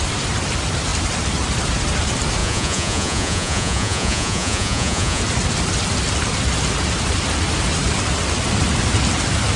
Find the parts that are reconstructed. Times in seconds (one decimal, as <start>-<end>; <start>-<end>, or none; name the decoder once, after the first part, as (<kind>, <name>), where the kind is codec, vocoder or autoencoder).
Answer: 2.4-5.2 (vocoder, Vocos)

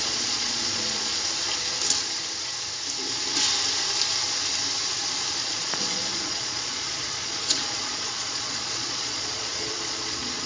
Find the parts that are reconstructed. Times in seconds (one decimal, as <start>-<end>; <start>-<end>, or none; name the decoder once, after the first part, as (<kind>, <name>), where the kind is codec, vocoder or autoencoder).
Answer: 0.0-1.1 (vocoder, Vocos); 5.4-10.5

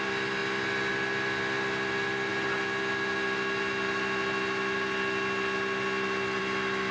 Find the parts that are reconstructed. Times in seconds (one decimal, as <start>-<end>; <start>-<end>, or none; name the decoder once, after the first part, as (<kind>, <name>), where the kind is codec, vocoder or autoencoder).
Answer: none